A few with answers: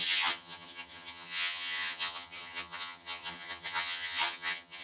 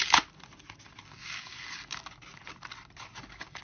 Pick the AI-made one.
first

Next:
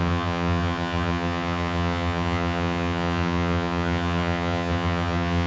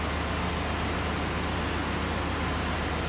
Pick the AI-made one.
first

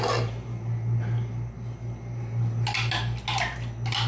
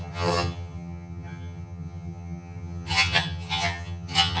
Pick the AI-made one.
second